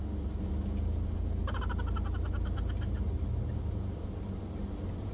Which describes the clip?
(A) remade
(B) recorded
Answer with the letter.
B